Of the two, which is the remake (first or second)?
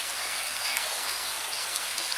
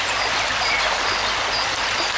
first